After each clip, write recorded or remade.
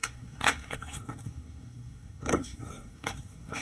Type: remade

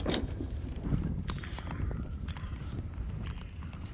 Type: remade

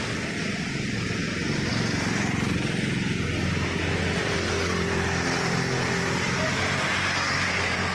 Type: recorded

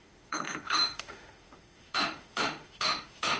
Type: remade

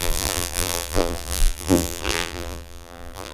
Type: remade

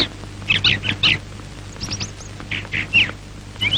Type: recorded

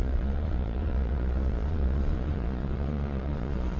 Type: remade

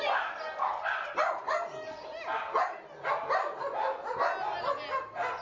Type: recorded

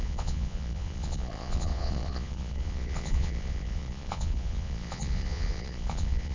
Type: remade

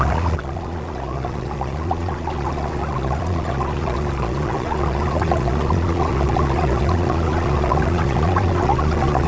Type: remade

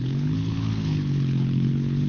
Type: remade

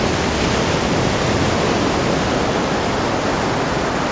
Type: recorded